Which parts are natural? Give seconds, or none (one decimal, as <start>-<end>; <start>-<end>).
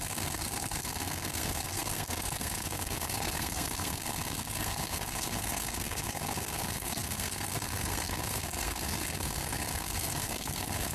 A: none